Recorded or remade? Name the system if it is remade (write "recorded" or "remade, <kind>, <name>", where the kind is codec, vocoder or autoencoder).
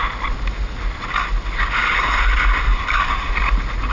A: recorded